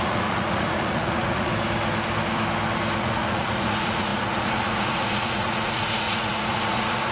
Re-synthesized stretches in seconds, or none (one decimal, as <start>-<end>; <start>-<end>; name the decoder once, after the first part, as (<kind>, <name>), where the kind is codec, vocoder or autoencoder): 0.0-1.5 (vocoder, Vocos); 3.0-7.1